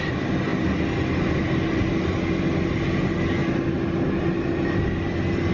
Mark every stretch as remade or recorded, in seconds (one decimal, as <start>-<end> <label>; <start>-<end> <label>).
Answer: 0.0-5.5 recorded